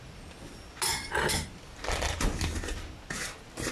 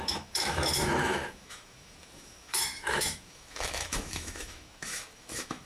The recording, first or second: first